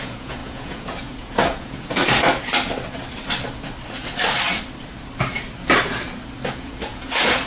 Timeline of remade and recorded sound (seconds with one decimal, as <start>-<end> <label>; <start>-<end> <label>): 0.0-2.0 remade; 2.0-6.5 recorded; 6.5-7.5 remade